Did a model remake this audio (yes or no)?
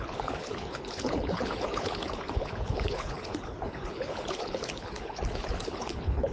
yes